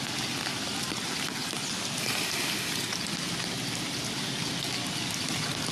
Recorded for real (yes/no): yes